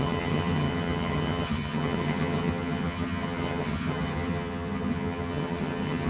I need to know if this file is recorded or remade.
remade